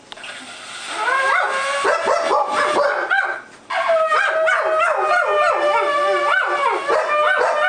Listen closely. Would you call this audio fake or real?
real